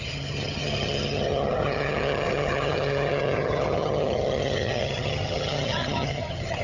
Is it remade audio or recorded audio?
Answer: remade